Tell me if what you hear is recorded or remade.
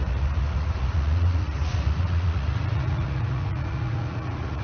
remade